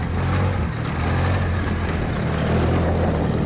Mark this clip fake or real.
real